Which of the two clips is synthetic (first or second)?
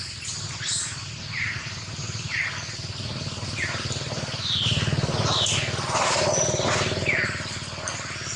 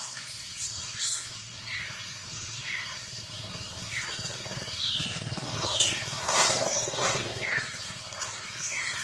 second